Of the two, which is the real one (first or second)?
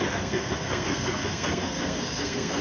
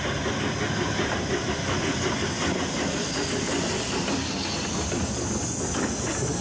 second